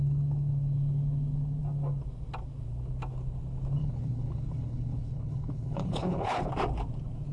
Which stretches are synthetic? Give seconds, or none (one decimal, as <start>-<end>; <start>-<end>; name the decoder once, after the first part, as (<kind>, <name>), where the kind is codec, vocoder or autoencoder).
3.8-6.5 (codec, HILCodec)